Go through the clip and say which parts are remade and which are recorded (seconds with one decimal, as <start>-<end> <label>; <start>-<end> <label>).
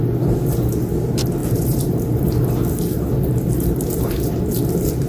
0.0-1.4 recorded; 1.4-4.5 remade; 4.5-5.1 recorded